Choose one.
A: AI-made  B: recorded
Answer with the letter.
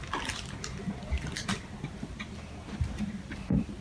A